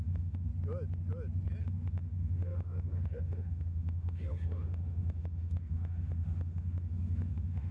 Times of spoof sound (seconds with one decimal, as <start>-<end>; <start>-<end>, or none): 0.0-0.5; 1.6-7.7